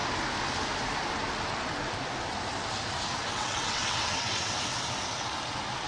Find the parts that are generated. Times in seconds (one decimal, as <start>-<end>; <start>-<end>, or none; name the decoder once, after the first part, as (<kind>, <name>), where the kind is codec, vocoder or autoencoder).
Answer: 3.3-4.6 (vocoder, WaveNeXt)